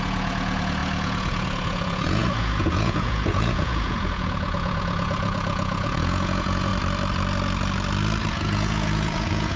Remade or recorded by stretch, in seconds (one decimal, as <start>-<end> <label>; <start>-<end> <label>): 0.0-6.7 remade; 6.7-8.3 recorded; 8.3-9.6 remade